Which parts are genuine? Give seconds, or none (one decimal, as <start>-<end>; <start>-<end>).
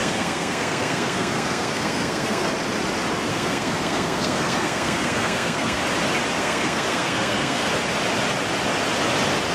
2.5-3.3; 5.8-6.4; 7.7-9.5